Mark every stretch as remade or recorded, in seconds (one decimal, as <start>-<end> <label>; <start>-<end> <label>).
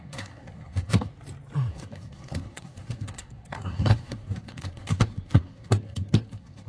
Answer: 0.0-1.1 remade; 1.1-1.7 recorded; 1.7-6.7 remade